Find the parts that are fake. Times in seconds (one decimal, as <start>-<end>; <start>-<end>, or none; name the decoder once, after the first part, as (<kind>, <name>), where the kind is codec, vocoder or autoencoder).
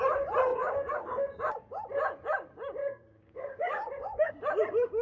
0.5-1.5 (codec, DAC); 2.8-4.3